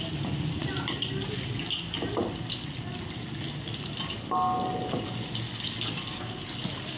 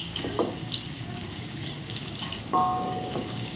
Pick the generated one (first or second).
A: second